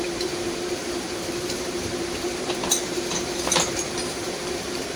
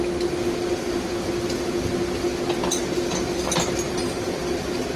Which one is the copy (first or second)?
first